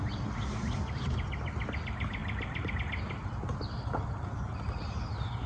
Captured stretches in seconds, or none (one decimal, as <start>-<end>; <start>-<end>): 0.0-2.2; 2.7-5.5